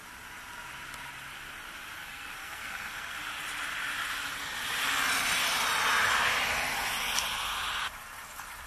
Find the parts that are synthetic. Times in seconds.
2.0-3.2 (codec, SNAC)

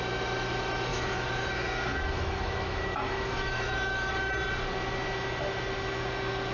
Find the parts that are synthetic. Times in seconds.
0.9-4.1 (autoencoder, DAC-VAE)

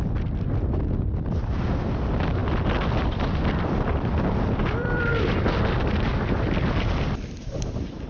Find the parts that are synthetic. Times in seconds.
2.4-5.2 (vocoder, BigVGAN v2)